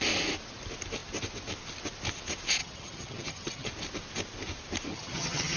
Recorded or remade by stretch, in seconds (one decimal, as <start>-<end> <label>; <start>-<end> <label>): 0.0-2.6 recorded; 2.6-3.7 remade; 3.7-4.9 recorded; 4.9-5.6 remade